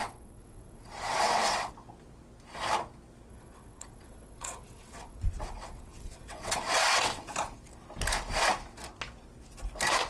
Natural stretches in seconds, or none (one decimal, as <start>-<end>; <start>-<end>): 1.7-3.3; 7.2-10.1